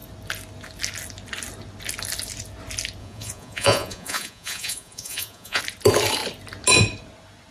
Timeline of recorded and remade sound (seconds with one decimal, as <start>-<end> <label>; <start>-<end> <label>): 0.0-3.0 recorded; 3.0-5.6 remade; 5.6-7.5 recorded